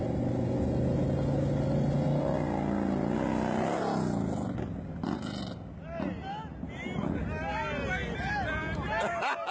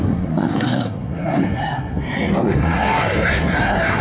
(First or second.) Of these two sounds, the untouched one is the first